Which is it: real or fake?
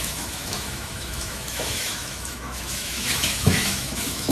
fake